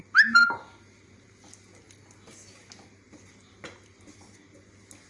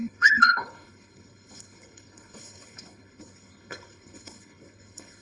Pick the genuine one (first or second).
first